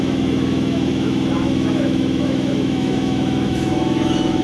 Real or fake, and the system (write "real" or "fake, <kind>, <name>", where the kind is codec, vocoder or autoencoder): fake, autoencoder, DAC-VAE